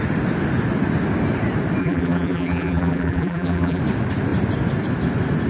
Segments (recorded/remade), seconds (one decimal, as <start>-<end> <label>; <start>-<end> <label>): 0.0-1.8 recorded; 1.8-3.8 remade; 3.8-5.5 recorded